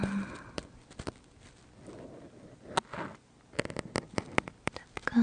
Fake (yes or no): no